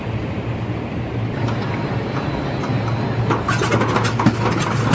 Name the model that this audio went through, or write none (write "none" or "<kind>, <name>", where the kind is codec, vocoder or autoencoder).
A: none